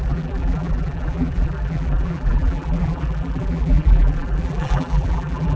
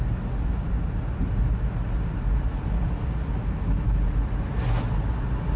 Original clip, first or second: second